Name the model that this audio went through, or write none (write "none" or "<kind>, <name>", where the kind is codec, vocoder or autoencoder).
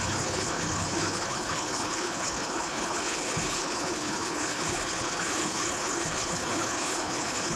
codec, HILCodec